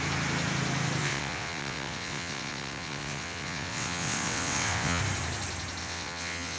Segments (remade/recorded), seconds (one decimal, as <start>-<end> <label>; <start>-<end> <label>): 0.0-1.0 recorded; 1.0-5.0 remade; 5.0-5.8 recorded; 5.8-6.6 remade